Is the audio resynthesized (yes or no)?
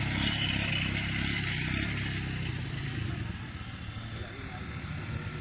no